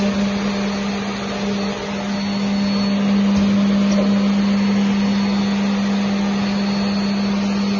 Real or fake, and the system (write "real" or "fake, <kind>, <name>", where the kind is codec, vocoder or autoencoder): real